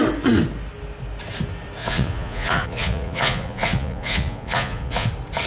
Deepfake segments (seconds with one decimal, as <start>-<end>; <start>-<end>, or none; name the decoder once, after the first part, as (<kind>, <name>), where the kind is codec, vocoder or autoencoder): 1.8-5.1 (vocoder, Vocos)